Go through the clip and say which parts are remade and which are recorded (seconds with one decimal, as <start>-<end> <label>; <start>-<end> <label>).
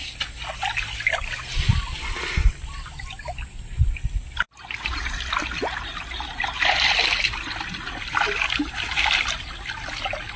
0.0-10.4 recorded